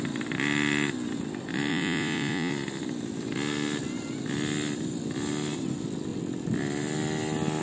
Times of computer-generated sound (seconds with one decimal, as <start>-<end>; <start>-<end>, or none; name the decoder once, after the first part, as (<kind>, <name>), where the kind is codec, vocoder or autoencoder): 1.7-2.5 (vocoder, Vocos)

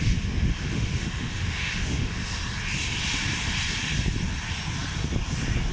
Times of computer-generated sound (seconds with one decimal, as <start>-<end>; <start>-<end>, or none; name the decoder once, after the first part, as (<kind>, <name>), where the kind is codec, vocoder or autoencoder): 0.0-2.4 (autoencoder, DAC-VAE)

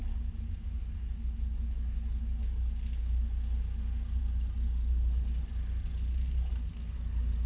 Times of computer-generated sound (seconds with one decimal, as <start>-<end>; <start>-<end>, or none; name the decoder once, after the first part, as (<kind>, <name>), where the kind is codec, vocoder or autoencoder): none

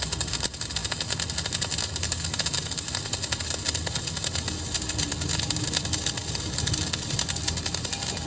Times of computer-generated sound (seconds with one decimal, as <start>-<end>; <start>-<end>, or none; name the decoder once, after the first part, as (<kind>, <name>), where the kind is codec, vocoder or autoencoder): none

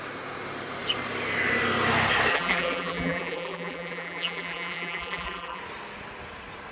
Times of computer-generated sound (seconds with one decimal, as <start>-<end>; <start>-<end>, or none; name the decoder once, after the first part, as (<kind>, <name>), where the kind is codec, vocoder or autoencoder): 2.3-5.6 (vocoder, BigVGAN v2)